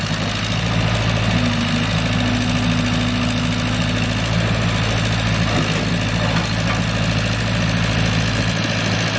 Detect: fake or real real